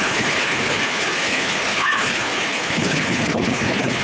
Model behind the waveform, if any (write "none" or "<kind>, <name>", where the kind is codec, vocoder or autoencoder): codec, HILCodec